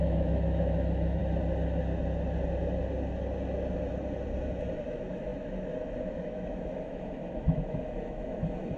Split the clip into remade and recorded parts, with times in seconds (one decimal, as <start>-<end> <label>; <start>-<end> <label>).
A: 0.0-1.2 remade; 1.2-4.7 recorded; 4.7-8.8 remade